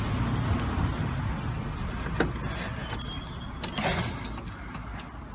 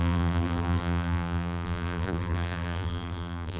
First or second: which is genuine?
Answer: first